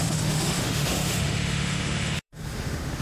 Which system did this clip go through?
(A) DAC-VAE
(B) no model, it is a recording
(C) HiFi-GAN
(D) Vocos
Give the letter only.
A